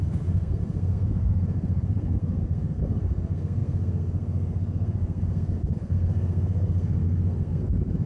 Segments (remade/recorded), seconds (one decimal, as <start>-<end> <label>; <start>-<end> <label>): 0.0-8.1 remade

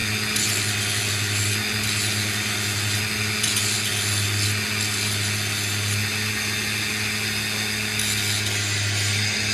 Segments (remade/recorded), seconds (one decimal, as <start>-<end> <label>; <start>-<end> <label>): 0.0-9.5 recorded

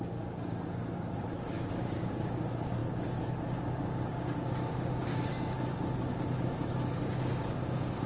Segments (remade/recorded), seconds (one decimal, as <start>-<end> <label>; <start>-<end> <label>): 0.0-8.1 remade

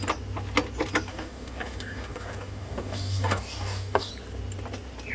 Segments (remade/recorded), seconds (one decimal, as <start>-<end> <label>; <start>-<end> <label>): 0.0-1.1 recorded; 1.1-4.1 remade; 4.1-5.1 recorded

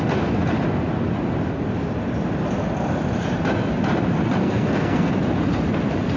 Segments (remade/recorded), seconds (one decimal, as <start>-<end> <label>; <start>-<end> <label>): 0.0-4.4 recorded; 4.4-5.1 remade; 5.1-6.2 recorded

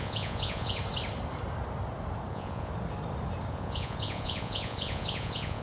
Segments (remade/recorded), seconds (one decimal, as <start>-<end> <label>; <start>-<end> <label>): 0.0-0.8 remade; 0.8-2.3 recorded; 2.3-2.7 remade; 2.7-3.5 recorded; 3.5-5.6 remade